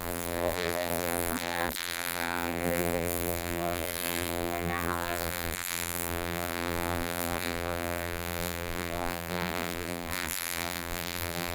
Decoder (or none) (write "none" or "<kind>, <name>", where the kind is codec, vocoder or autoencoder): vocoder, BigVGAN v2